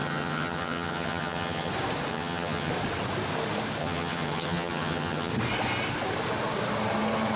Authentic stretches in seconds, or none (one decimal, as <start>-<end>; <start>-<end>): 1.7-2.1; 2.7-3.8; 5.3-7.4